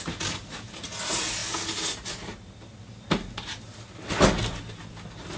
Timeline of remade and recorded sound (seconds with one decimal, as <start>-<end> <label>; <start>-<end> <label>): 0.0-5.4 recorded